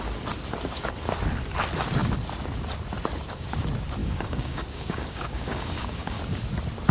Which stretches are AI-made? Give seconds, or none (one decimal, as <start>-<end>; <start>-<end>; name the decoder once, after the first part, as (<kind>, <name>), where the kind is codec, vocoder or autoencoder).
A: 4.0-6.2 (codec, DAC)